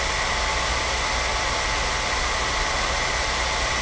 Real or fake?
real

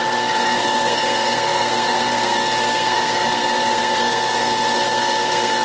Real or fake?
fake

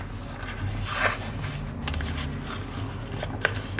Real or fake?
real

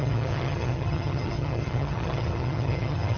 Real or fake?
fake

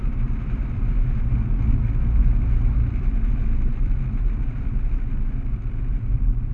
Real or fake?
real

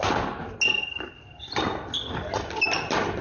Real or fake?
real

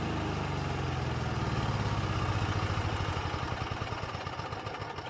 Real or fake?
real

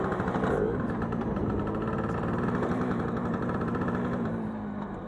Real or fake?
fake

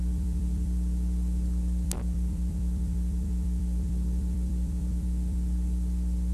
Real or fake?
fake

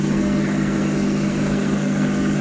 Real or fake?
fake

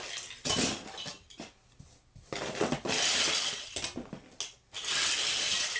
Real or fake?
real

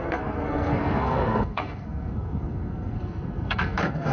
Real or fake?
fake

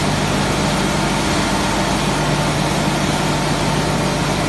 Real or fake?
real